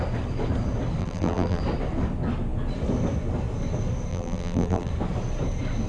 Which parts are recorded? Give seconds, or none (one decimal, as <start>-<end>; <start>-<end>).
0.0-1.0; 1.6-4.1; 4.9-5.9